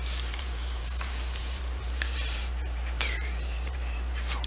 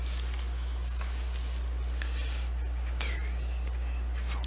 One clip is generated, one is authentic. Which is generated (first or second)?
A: first